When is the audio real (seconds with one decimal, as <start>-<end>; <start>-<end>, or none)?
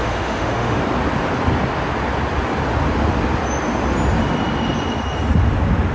0.8-5.9